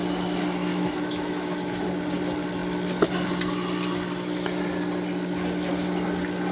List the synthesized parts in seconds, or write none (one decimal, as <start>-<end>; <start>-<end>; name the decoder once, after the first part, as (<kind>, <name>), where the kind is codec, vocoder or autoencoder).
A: 0.7-1.9 (autoencoder, DAC-VAE)